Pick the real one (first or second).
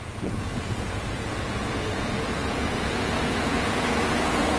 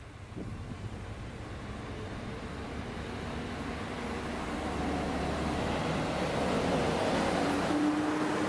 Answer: second